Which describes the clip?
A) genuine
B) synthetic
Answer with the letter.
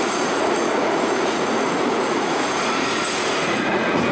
B